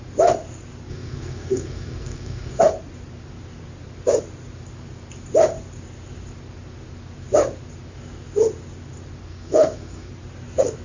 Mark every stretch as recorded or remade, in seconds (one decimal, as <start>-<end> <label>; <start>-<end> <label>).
0.0-0.9 recorded; 0.9-2.6 remade; 2.6-9.3 recorded; 9.3-10.1 remade; 10.1-10.8 recorded